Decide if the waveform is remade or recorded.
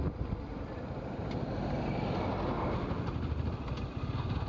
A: recorded